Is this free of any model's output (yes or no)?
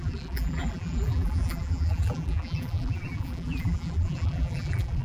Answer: no